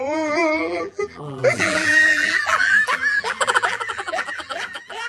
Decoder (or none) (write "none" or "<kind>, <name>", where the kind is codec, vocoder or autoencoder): vocoder, BigVGAN v2